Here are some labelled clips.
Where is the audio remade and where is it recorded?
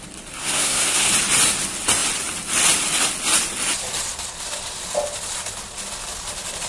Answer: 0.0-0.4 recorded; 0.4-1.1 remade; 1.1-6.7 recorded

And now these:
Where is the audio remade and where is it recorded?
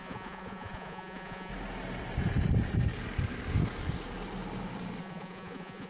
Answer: 0.0-1.5 remade; 1.5-5.0 recorded; 5.0-5.9 remade